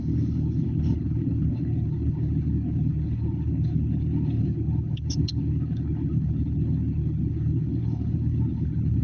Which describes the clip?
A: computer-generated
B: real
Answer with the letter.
A